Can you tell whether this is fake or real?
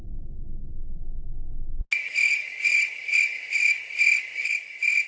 real